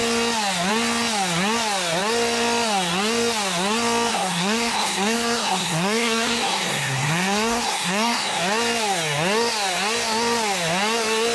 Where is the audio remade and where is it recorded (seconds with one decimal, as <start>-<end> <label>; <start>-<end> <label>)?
0.0-4.1 recorded; 4.1-8.4 remade; 8.4-11.3 recorded